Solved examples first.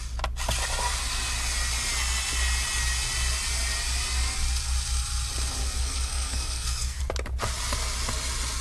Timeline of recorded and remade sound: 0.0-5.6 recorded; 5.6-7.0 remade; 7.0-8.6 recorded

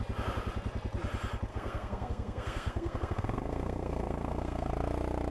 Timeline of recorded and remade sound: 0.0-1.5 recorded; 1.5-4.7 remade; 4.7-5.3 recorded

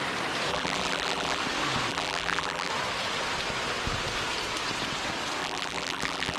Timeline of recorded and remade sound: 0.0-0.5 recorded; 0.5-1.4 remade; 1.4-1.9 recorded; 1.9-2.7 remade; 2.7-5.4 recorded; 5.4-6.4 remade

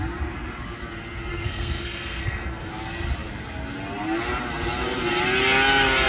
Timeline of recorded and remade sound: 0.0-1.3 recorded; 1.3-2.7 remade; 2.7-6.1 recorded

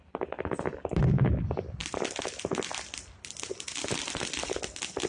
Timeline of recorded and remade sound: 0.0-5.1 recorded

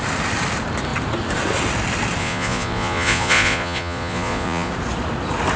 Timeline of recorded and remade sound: 0.0-2.2 recorded; 2.2-4.7 remade; 4.7-5.6 recorded

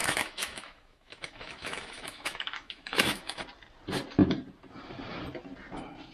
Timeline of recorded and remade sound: 0.0-3.4 remade; 3.4-6.1 recorded